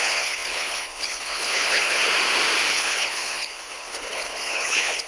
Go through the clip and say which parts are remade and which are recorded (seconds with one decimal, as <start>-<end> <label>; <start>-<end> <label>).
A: 0.0-2.0 remade; 2.0-2.7 recorded; 2.7-5.1 remade